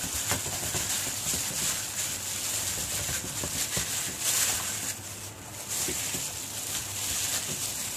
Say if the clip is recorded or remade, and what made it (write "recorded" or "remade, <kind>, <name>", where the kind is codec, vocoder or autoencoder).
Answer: recorded